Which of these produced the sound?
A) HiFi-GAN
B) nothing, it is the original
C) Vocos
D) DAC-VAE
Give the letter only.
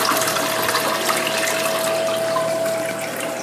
B